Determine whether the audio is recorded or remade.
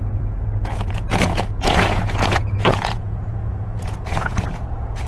remade